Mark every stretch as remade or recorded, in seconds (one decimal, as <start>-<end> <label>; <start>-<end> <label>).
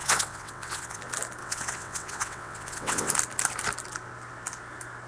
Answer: 0.0-1.0 remade; 1.0-1.4 recorded; 1.4-3.1 remade; 3.1-5.1 recorded